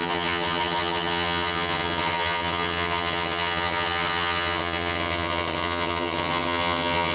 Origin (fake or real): fake